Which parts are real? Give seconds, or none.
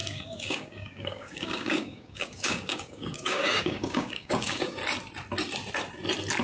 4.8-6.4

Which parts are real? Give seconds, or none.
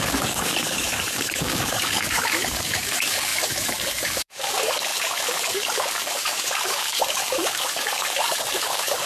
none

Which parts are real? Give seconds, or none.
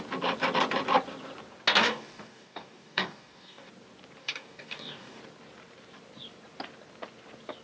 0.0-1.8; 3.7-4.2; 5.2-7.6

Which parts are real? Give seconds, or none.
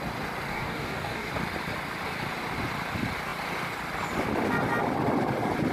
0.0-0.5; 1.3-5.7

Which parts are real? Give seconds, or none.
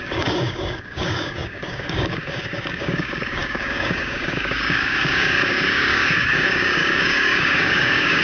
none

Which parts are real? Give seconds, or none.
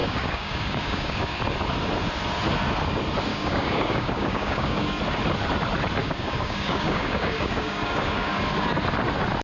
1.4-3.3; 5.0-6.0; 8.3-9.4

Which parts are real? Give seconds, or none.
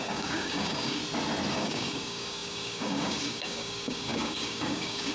1.0-1.5